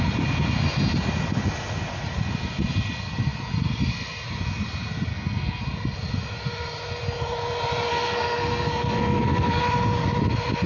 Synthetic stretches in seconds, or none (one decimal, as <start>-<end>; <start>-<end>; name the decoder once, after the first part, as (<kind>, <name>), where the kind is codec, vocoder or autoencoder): 5.1-5.6 (codec, SNAC); 7.9-9.6